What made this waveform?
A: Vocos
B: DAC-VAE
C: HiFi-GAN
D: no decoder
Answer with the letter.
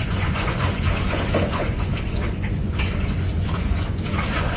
A